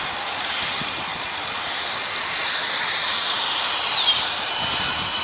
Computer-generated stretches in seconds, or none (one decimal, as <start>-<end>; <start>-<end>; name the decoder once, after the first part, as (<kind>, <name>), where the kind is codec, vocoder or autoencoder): none